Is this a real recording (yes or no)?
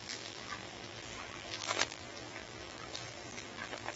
no